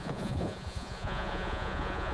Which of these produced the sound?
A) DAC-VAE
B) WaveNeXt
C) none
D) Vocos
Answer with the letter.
D